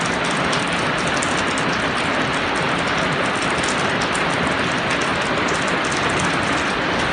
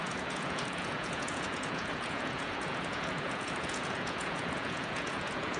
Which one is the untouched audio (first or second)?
first